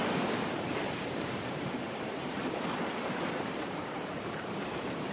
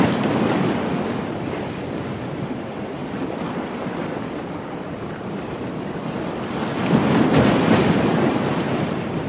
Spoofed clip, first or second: first